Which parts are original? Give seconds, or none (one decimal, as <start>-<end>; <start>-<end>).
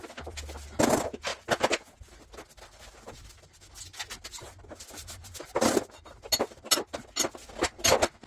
0.0-1.3; 2.0-8.3